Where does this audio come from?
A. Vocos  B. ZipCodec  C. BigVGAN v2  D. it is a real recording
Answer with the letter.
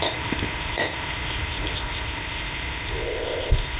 B